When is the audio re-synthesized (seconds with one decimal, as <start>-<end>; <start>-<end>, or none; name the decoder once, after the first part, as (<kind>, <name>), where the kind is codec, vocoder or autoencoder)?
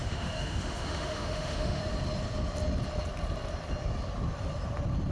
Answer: 0.0-1.8 (autoencoder, DAC-VAE)